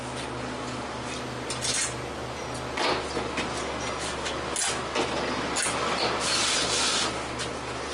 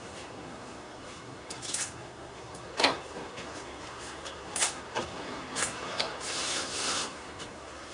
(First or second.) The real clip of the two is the first